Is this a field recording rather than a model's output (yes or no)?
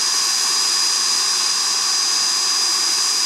yes